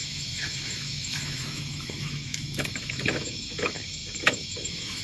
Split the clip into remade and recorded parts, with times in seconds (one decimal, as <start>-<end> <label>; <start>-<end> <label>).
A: 0.0-5.0 remade